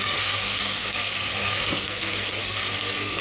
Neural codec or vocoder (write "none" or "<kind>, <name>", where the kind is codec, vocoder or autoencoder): codec, SNAC